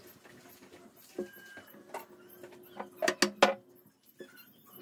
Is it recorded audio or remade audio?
recorded